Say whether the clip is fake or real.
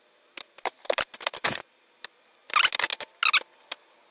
real